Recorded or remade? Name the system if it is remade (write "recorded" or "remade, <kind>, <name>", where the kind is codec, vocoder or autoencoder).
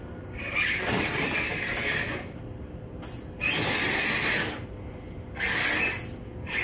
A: recorded